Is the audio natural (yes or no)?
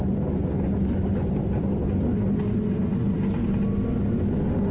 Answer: yes